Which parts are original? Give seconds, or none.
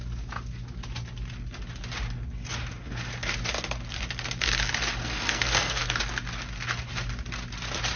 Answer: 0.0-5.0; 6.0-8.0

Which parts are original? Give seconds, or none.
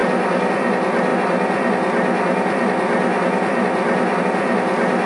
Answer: 0.0-5.1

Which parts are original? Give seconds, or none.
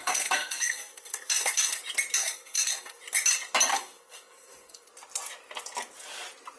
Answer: 1.8-2.2; 3.0-3.7; 4.9-6.6